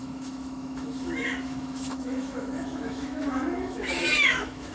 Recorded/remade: remade